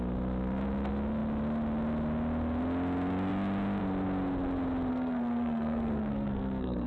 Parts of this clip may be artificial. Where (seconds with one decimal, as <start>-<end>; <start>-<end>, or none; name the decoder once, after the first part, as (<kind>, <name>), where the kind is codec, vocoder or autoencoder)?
4.9-6.9 (codec, SNAC)